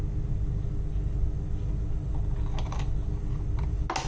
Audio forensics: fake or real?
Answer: real